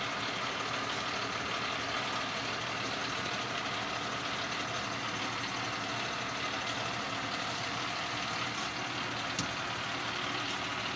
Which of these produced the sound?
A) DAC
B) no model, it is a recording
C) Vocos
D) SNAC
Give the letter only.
B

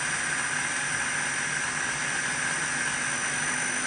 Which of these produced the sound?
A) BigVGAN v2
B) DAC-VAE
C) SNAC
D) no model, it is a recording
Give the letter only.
D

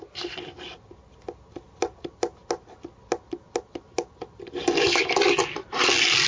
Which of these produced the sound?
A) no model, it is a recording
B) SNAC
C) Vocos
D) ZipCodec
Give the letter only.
A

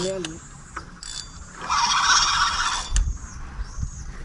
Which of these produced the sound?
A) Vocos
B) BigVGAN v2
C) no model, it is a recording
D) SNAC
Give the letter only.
C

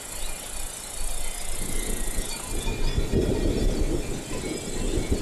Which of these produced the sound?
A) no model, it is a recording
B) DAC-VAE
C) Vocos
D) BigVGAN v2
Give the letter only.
A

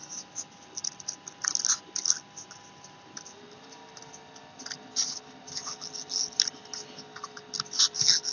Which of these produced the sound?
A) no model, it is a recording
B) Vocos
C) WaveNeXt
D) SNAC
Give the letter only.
A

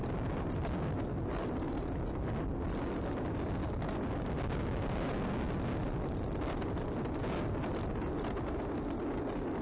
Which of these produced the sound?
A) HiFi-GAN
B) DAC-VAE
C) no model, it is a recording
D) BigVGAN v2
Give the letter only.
C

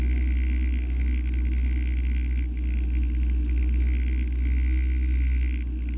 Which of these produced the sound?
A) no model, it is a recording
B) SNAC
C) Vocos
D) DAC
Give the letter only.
A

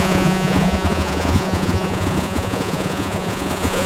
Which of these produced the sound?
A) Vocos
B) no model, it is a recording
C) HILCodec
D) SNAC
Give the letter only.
A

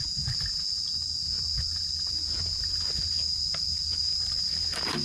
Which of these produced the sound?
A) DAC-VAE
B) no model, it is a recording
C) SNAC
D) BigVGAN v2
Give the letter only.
B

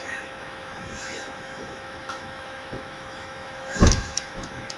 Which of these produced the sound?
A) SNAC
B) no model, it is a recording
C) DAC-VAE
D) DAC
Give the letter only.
C